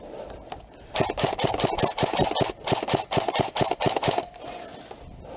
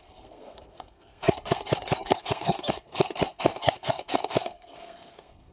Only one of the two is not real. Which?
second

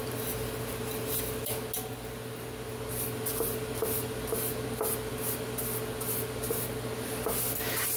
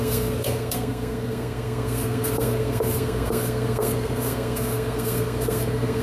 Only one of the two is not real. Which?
second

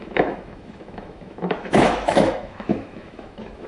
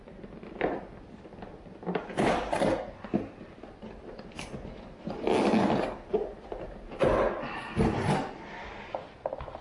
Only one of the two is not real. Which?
first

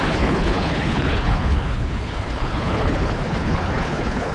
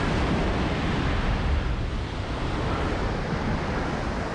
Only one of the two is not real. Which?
first